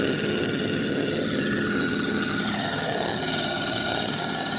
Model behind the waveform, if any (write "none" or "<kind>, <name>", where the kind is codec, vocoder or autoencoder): vocoder, HiFi-GAN